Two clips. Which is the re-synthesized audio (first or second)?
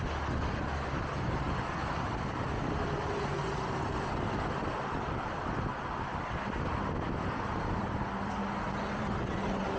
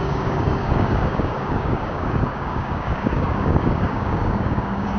second